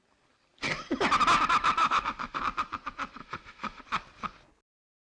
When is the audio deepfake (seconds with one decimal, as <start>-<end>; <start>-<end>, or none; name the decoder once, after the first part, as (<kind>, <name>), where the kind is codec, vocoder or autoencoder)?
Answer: 1.8-2.4 (autoencoder, DAC-VAE); 3.2-3.8